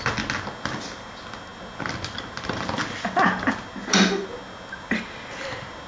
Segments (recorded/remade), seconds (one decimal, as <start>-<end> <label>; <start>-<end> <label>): 0.0-5.9 recorded

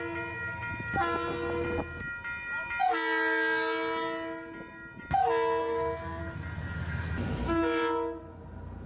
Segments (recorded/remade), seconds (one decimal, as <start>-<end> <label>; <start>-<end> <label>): 0.0-5.6 recorded; 5.6-6.2 remade; 6.2-8.9 recorded